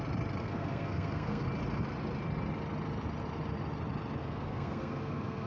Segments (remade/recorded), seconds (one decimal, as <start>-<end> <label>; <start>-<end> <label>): 0.0-0.4 recorded; 0.4-1.4 remade; 1.4-4.2 recorded; 4.2-5.5 remade